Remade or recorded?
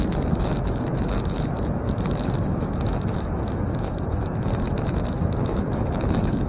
remade